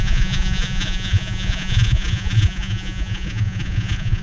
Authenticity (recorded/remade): remade